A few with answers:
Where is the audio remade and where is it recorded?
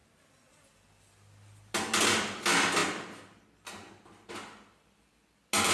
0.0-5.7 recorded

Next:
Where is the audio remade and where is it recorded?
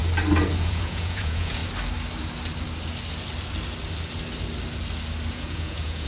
0.0-0.6 recorded; 0.6-1.6 remade; 1.6-5.3 recorded; 5.3-6.1 remade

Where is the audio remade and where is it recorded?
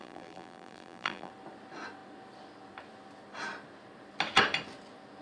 0.0-1.3 remade; 1.3-5.2 recorded